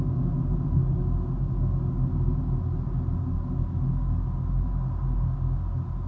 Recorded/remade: recorded